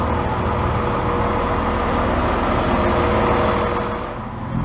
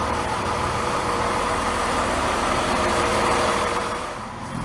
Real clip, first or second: first